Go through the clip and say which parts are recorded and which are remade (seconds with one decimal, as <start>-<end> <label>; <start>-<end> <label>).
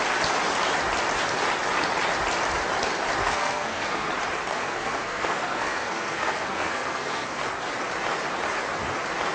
0.0-3.2 recorded; 3.2-4.1 remade; 4.1-4.5 recorded; 4.5-7.4 remade; 7.4-9.3 recorded